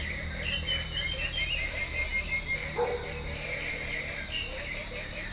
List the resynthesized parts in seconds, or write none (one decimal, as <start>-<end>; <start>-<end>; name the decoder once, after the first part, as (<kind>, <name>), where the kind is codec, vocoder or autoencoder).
none